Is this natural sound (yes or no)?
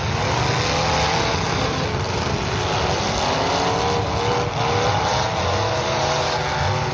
yes